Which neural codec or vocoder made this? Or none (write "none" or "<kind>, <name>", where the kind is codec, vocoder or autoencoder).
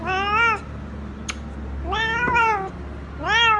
none